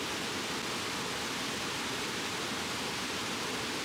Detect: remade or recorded recorded